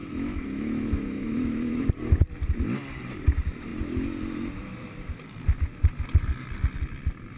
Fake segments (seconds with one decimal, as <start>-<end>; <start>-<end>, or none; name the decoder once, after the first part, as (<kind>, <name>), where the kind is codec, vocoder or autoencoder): 0.0-1.9 (autoencoder, DAC-VAE)